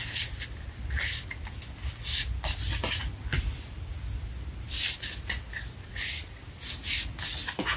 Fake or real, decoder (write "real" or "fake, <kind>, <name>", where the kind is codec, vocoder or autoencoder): real